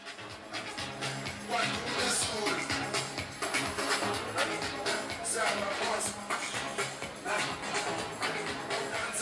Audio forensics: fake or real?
real